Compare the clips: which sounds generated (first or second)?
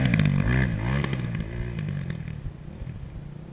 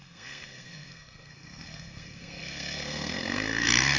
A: second